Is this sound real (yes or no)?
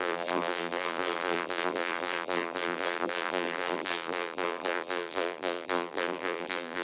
no